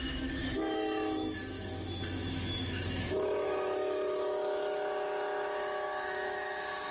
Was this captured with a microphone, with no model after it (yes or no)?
no